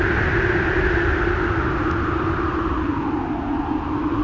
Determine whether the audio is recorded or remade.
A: recorded